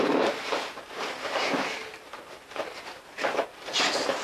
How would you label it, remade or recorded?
remade